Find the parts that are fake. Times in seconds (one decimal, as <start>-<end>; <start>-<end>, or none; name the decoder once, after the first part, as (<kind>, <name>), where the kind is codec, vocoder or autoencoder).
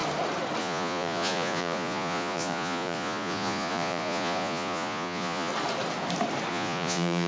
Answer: 0.6-5.5 (vocoder, Vocos); 6.5-7.3